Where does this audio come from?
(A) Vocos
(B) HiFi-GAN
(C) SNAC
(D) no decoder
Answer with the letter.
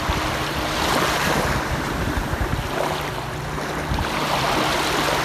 D